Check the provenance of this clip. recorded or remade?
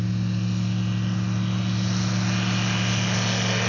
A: recorded